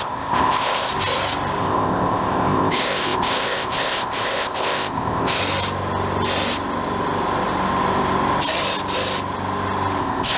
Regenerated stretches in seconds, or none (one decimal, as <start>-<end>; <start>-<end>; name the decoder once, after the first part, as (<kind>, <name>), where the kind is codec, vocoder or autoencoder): 0.0-0.9 (codec, ZipCodec); 1.6-5.4; 10.0-10.4